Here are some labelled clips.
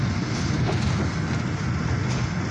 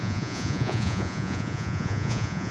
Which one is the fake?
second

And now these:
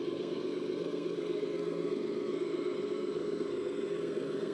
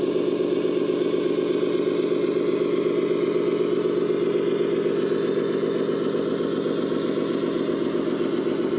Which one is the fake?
first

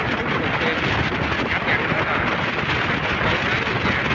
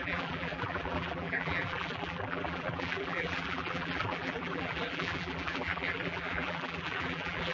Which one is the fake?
second